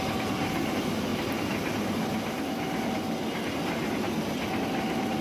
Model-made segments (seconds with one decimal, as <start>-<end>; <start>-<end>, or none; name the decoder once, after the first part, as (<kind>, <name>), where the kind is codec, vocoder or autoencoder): none